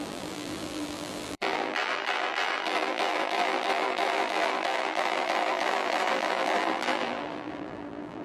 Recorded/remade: remade